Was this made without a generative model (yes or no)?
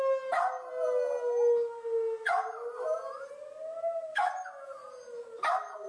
yes